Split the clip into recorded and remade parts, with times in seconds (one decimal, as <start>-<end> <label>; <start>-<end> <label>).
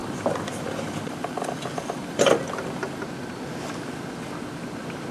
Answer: 0.0-3.0 remade; 3.0-5.1 recorded